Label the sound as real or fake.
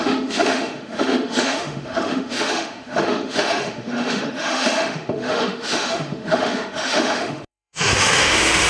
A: fake